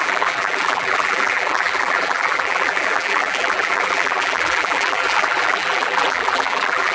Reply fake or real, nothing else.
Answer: fake